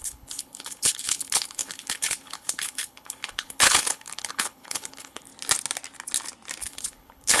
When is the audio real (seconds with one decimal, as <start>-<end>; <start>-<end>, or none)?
5.3-6.6